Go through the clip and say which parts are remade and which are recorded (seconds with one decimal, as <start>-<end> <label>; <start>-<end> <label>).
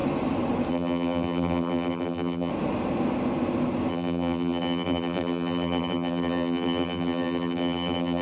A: 0.0-0.7 recorded; 0.7-2.5 remade; 2.5-3.9 recorded; 3.9-8.2 remade